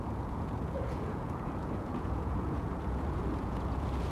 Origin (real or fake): fake